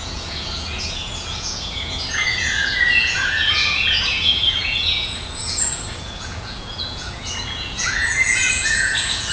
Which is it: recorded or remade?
remade